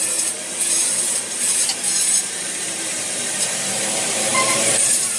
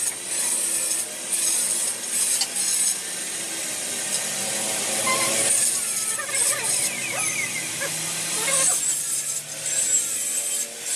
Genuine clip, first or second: second